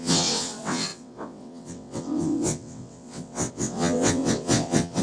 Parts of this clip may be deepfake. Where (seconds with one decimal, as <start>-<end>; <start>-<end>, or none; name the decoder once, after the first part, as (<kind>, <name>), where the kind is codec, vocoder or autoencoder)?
0.0-5.0 (vocoder, WaveNeXt)